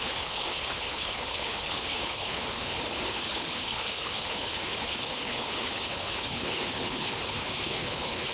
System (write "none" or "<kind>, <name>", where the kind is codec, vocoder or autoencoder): codec, HILCodec